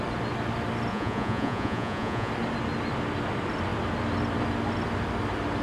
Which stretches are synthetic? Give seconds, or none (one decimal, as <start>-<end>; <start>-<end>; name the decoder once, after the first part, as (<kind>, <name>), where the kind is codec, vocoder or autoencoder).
0.9-2.3 (vocoder, Vocos)